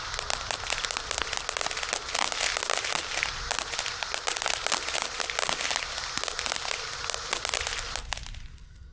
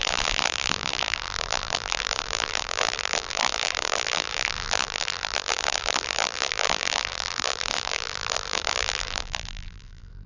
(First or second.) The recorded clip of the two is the first